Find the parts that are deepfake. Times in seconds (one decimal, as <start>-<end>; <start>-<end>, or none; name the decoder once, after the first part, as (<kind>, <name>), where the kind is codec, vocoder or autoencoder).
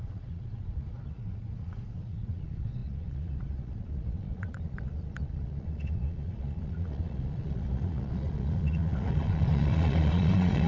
0.0-10.7 (vocoder, Vocos)